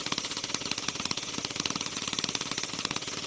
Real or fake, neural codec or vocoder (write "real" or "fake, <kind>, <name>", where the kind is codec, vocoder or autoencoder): real